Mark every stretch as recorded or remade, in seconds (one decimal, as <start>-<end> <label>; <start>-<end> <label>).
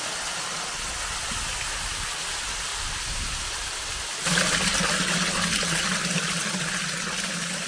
0.0-7.7 recorded